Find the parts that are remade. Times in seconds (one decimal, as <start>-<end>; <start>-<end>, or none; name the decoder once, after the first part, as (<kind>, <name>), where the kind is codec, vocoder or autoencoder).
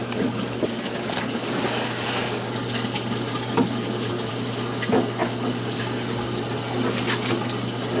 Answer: 0.0-4.3 (codec, DAC); 5.2-5.8